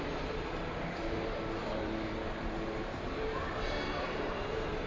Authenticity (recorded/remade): remade